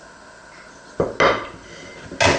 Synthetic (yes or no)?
no